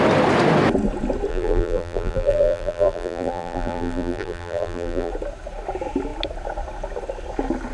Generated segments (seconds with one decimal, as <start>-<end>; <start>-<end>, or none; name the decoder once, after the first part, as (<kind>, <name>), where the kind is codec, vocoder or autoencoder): 1.3-5.1 (vocoder, BigVGAN v2)